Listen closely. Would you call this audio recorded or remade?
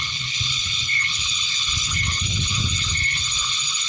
remade